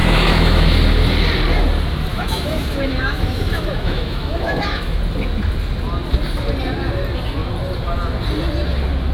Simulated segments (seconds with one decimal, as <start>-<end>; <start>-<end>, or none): 0.0-0.8; 2.1-5.0